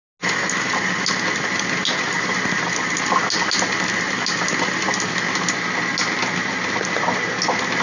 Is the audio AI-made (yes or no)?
no